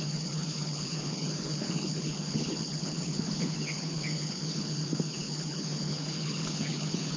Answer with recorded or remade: remade